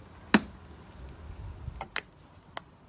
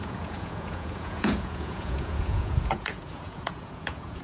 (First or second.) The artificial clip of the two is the second